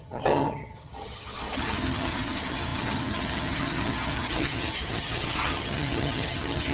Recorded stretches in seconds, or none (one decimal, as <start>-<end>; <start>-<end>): none